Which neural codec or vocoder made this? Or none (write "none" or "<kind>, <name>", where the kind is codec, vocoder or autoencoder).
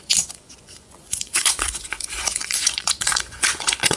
vocoder, Vocos